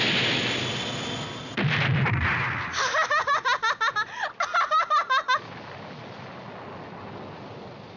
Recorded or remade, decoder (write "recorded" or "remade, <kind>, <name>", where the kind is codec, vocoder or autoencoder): recorded